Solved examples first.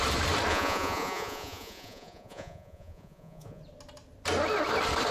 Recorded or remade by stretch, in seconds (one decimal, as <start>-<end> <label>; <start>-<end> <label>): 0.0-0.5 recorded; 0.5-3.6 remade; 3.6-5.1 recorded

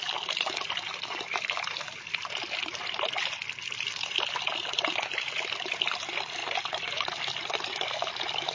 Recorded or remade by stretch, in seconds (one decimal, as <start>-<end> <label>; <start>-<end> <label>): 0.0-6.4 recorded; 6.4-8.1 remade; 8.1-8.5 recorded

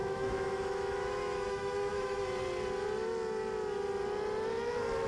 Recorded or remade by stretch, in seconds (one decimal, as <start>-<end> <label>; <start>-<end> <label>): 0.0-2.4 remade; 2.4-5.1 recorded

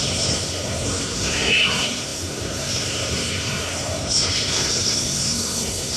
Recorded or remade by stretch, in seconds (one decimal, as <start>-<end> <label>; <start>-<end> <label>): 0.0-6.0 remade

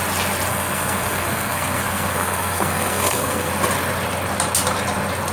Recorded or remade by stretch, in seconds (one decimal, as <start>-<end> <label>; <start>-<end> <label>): 0.0-0.5 recorded; 0.5-3.5 remade; 3.5-5.3 recorded

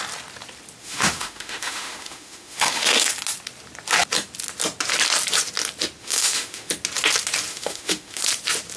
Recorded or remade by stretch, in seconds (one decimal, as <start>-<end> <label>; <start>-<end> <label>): 0.0-0.8 recorded; 0.8-3.1 remade; 3.1-6.0 recorded; 6.0-6.7 remade; 6.7-7.5 recorded; 7.5-8.2 remade; 8.2-8.8 recorded

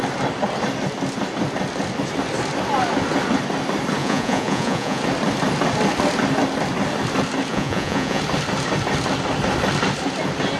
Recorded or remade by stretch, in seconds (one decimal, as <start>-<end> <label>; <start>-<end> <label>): 0.0-4.0 recorded; 4.0-5.0 remade; 5.0-7.5 recorded; 7.5-8.2 remade; 8.2-10.6 recorded

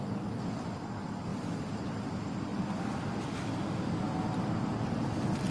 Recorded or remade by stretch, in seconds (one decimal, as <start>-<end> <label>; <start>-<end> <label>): 0.0-2.5 recorded; 2.5-3.0 remade; 3.0-5.5 recorded